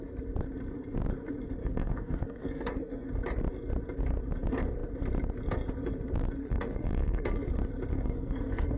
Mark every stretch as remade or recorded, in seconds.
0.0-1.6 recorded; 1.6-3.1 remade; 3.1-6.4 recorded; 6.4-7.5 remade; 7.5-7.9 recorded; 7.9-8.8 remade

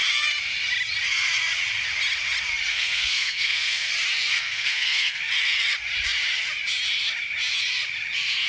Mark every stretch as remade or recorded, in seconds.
0.0-2.7 recorded; 2.7-3.9 remade; 3.9-4.3 recorded; 4.3-5.2 remade; 5.2-8.5 recorded

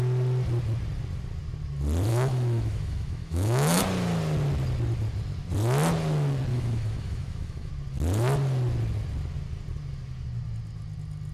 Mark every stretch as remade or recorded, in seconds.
0.0-2.1 recorded; 2.1-3.8 remade; 3.8-6.5 recorded; 6.5-7.7 remade; 7.7-11.3 recorded

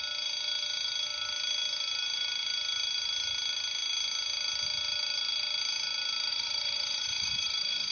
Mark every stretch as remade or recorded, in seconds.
0.0-6.3 recorded; 6.3-7.9 remade

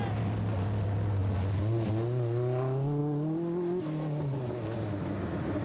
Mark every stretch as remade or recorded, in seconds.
0.0-5.6 recorded

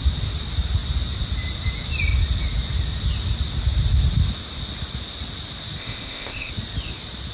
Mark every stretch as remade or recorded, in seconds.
0.0-5.8 recorded; 5.8-6.5 remade; 6.5-7.3 recorded

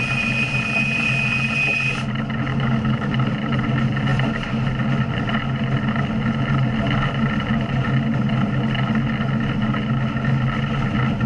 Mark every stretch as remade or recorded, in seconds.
0.0-2.5 recorded; 2.5-3.1 remade; 3.1-11.3 recorded